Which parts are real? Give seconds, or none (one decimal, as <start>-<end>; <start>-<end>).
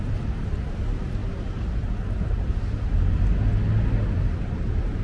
0.0-5.0